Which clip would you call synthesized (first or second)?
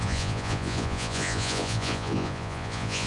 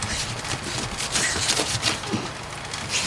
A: first